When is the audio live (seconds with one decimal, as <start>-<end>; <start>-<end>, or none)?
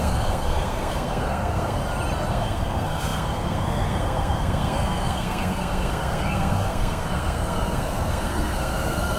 1.8-2.3